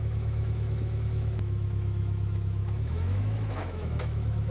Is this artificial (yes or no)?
yes